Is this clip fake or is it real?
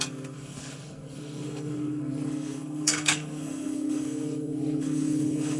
fake